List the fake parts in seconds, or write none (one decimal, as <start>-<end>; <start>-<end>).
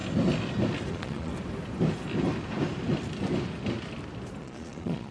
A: 0.9-1.3; 4.4-5.1